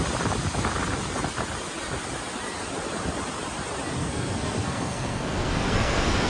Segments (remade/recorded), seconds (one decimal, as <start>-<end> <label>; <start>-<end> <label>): 0.0-4.0 recorded; 4.0-6.3 remade